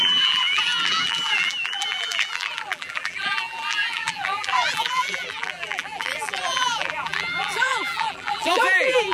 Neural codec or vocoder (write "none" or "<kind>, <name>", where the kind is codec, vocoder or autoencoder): vocoder, BigVGAN v2